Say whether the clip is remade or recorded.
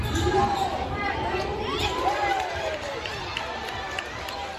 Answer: remade